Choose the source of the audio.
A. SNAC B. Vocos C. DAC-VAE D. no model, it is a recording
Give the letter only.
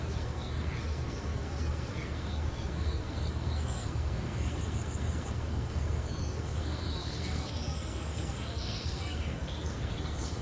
A